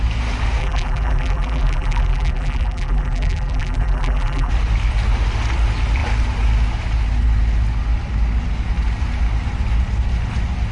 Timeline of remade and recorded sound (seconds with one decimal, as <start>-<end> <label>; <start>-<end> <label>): 0.0-0.6 recorded; 0.6-4.5 remade; 4.5-10.7 recorded